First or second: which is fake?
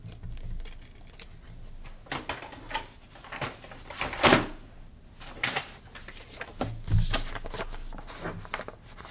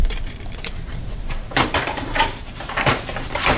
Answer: second